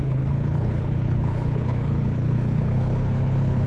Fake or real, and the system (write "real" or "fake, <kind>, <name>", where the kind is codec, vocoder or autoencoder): fake, codec, HILCodec